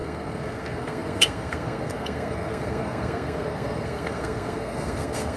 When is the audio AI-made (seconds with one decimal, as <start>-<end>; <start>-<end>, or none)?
0.0-5.4